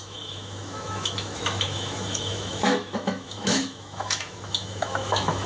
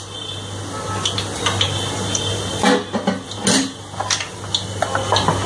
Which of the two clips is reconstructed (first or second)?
first